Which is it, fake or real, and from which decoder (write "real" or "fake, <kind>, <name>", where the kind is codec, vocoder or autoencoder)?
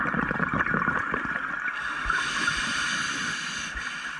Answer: real